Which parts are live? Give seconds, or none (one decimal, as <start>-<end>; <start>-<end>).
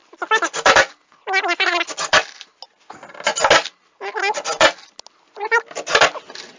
0.0-6.6